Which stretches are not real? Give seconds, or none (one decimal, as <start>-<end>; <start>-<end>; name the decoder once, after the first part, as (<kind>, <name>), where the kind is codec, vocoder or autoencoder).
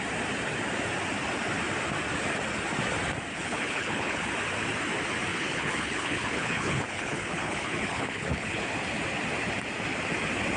3.3-4.3 (codec, HILCodec); 5.3-8.7